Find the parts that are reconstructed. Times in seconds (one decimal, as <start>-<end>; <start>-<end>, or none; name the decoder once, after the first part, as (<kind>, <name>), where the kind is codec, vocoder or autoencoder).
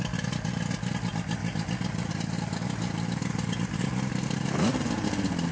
none